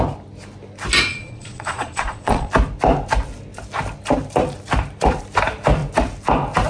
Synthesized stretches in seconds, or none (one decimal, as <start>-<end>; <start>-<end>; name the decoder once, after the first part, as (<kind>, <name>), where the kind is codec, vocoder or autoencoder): 1.1-2.5 (vocoder, Vocos)